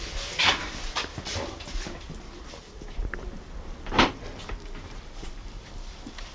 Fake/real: fake